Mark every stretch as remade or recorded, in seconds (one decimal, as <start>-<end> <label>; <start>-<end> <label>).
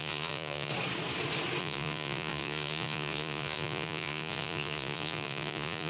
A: 0.0-0.7 remade; 0.7-1.6 recorded; 1.6-5.9 remade